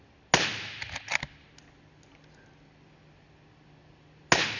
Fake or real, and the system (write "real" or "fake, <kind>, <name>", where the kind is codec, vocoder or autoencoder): real